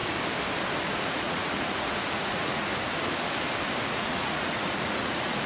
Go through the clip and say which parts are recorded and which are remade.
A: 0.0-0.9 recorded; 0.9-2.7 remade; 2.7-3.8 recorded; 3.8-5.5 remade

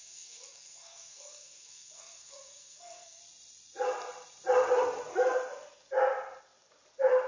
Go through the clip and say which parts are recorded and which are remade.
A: 0.0-3.2 remade; 3.2-7.3 recorded

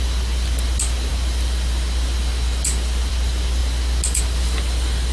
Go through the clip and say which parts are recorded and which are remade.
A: 0.0-5.1 recorded

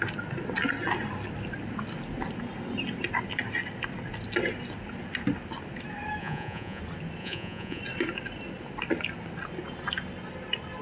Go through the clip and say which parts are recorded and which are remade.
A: 0.0-6.2 recorded; 6.2-6.8 remade; 6.8-7.2 recorded; 7.2-7.8 remade; 7.8-10.8 recorded

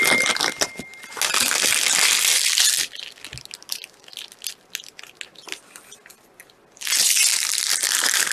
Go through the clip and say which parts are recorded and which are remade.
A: 0.0-8.3 recorded

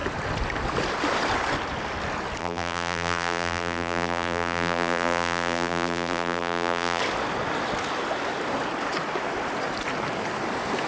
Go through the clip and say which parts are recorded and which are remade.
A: 0.0-2.4 recorded; 2.4-7.0 remade; 7.0-10.9 recorded

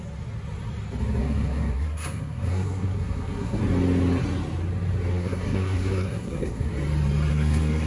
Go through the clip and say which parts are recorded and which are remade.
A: 0.0-1.2 recorded; 1.2-3.6 remade; 3.6-5.1 recorded; 5.1-6.7 remade; 6.7-7.3 recorded; 7.3-7.9 remade

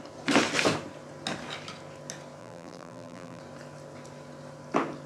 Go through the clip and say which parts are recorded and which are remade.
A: 0.0-2.4 recorded; 2.4-3.4 remade; 3.4-5.1 recorded